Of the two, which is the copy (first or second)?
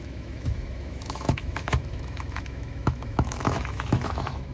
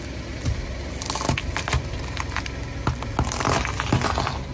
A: first